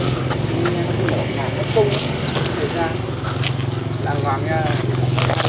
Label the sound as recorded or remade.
recorded